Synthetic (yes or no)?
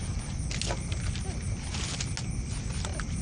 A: no